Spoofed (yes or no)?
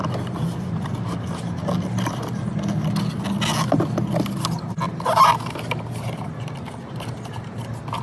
no